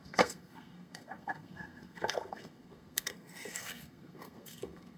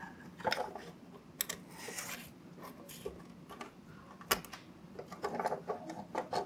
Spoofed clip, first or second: first